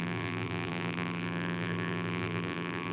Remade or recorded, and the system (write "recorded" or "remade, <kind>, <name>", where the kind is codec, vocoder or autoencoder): remade, vocoder, BigVGAN v2